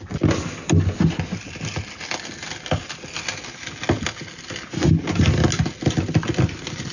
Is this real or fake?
real